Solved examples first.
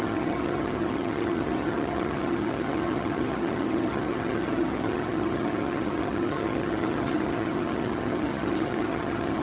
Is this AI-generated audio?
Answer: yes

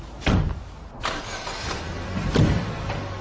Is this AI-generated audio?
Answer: no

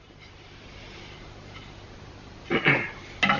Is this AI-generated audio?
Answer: no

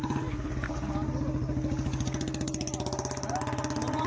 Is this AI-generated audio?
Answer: no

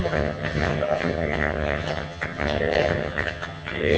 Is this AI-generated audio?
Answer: yes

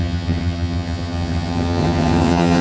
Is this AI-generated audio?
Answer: yes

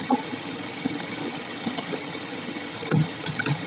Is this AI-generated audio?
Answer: yes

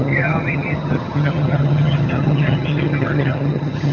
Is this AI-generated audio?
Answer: yes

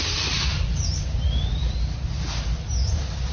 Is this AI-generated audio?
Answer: no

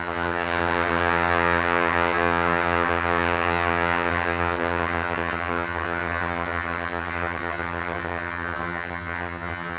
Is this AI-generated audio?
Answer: yes